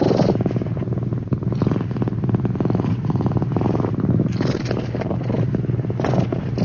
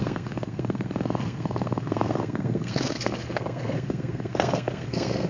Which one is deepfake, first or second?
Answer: second